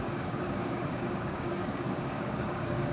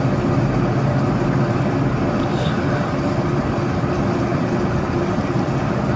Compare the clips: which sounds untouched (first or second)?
second